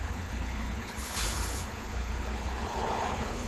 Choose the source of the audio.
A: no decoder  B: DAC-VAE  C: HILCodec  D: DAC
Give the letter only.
C